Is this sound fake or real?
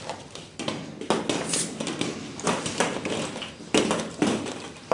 real